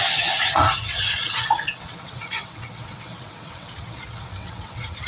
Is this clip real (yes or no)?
no